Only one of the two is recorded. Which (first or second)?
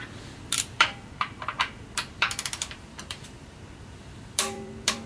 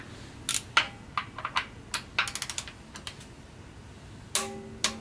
second